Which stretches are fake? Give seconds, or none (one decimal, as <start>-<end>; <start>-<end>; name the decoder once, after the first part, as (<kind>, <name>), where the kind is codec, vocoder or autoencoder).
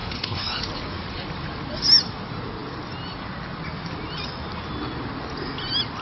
0.0-0.6 (codec, HILCodec)